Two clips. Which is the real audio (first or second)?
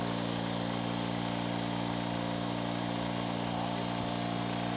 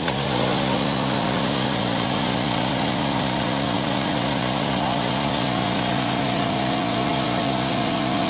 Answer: first